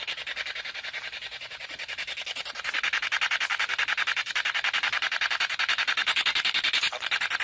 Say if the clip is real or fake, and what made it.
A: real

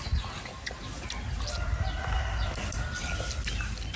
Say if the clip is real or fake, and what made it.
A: real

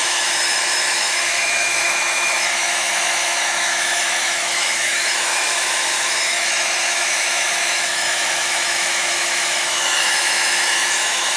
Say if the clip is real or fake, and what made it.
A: fake, autoencoder, DAC-VAE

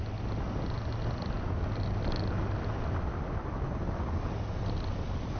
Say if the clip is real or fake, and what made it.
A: real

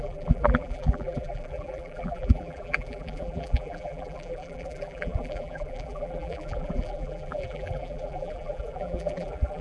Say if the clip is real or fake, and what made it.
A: fake, vocoder, BigVGAN v2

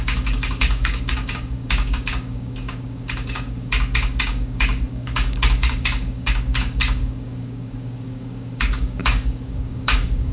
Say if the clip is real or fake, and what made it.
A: fake, codec, DAC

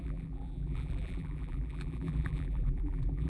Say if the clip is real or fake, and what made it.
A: fake, vocoder, BigVGAN v2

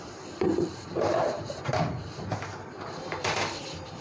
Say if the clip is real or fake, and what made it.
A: fake, vocoder, BigVGAN v2